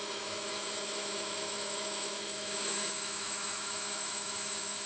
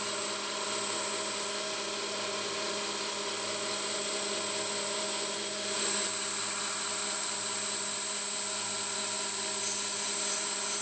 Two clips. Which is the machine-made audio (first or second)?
first